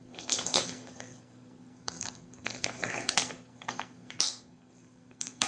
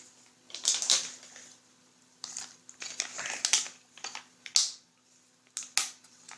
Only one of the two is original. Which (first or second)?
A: second